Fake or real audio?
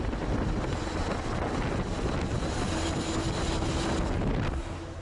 real